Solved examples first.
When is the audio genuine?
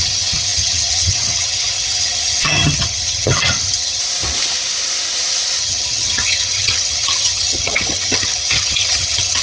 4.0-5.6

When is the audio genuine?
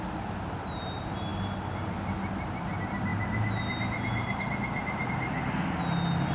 0.0-6.3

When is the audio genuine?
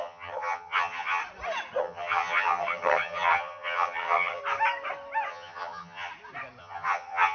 1.2-1.8; 4.4-5.3; 6.1-6.6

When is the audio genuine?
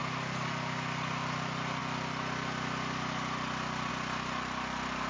0.0-5.1